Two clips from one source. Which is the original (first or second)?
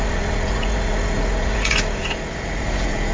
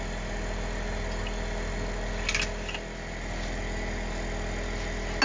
second